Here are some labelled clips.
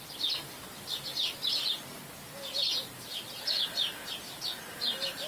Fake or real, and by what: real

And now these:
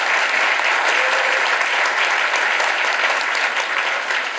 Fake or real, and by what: real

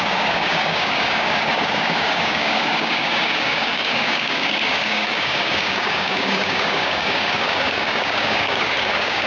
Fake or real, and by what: fake, codec, DAC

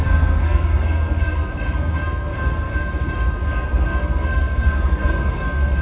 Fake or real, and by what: fake, codec, SNAC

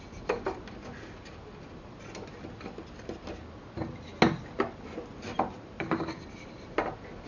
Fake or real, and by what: real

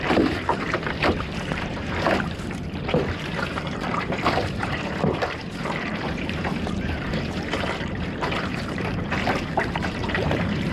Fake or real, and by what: fake, vocoder, BigVGAN v2